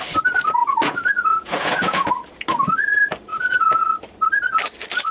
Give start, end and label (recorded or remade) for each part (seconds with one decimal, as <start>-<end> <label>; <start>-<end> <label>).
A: 0.0-0.6 recorded; 0.6-2.1 remade; 2.1-3.3 recorded; 3.3-3.8 remade; 3.8-5.1 recorded